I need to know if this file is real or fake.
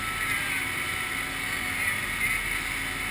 real